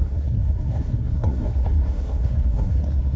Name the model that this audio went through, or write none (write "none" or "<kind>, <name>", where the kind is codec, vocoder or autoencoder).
codec, SNAC